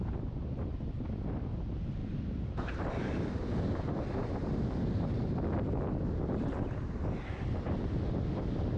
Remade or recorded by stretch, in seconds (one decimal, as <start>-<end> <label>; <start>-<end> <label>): 0.0-8.8 recorded